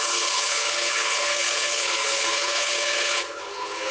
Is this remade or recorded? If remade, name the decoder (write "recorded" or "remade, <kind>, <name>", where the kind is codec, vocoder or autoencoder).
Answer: remade, codec, HILCodec